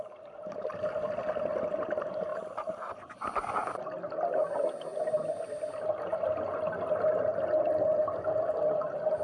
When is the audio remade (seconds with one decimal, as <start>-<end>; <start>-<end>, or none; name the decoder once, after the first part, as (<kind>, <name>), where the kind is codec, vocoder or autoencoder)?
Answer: none

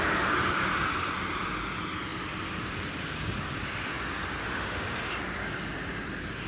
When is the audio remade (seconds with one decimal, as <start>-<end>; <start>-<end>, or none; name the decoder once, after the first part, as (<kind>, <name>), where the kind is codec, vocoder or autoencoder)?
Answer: 4.4-5.1 (autoencoder, DAC-VAE)

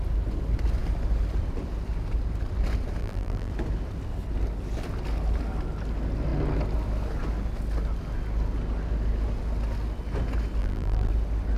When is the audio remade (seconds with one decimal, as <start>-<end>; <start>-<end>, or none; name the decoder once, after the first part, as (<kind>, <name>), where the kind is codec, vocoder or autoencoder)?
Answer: 3.0-3.5 (vocoder, BigVGAN v2); 10.6-11.1

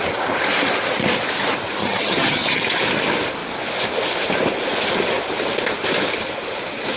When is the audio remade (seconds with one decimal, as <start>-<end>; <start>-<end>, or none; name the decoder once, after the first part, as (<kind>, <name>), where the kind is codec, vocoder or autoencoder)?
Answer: 1.8-2.6 (vocoder, HiFi-GAN)

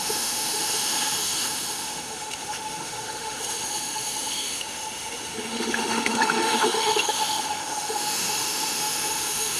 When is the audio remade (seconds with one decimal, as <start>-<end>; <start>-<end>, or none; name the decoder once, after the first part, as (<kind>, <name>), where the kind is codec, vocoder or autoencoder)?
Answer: 0.0-9.6 (autoencoder, DAC-VAE)

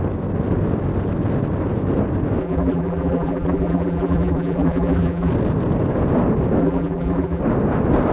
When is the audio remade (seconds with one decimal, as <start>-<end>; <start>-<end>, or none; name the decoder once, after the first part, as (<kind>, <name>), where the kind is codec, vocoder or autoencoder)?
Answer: 2.4-5.3 (vocoder, BigVGAN v2); 6.6-7.4

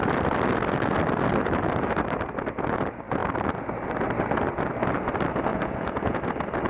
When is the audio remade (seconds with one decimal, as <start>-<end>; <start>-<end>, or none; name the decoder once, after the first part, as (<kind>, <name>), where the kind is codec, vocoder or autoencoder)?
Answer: 5.5-6.2 (vocoder, Vocos)